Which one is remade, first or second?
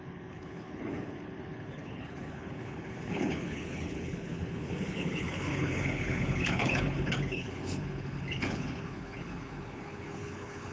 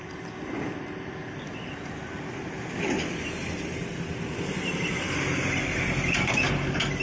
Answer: first